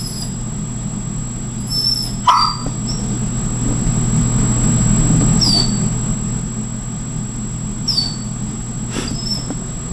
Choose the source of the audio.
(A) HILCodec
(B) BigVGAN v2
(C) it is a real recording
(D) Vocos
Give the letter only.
C